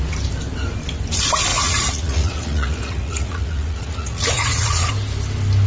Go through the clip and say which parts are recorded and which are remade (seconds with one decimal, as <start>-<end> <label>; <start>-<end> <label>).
0.0-1.5 recorded; 1.5-4.9 remade; 4.9-5.7 recorded